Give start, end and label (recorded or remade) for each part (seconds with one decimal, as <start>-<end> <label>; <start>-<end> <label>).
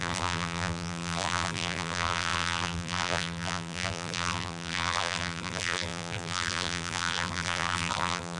0.0-8.4 remade